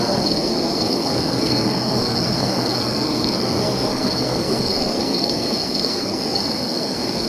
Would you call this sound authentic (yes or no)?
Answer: no